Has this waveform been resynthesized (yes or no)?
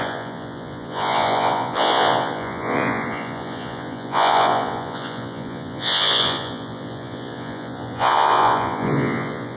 yes